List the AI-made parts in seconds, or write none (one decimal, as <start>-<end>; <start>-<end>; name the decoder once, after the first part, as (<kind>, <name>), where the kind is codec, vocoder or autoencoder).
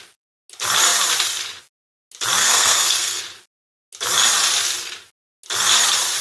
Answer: 2.4-3.2 (codec, SNAC)